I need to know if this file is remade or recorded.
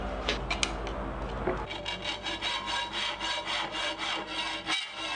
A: recorded